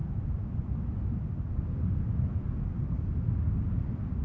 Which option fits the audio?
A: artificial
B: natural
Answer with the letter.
B